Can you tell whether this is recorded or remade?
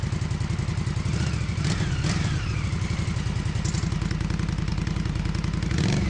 recorded